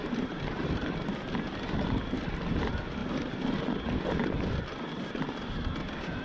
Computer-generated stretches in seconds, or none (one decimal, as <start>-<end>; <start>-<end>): none